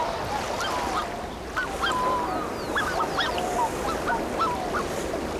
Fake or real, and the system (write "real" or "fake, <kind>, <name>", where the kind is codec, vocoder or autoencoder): real